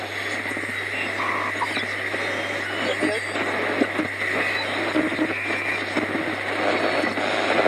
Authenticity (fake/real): real